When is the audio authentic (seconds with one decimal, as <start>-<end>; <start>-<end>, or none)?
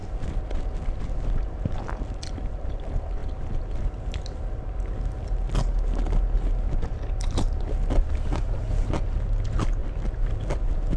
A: 0.0-11.0